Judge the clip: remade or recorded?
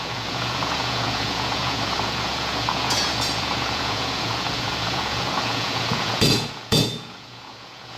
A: remade